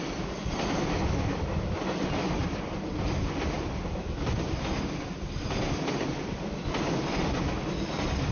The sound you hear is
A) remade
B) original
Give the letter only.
B